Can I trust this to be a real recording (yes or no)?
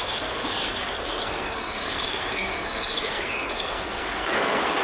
no